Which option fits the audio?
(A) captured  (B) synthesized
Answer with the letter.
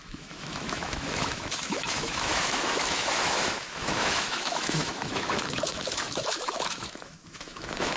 B